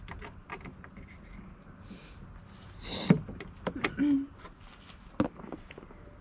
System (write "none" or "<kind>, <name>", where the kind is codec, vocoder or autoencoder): none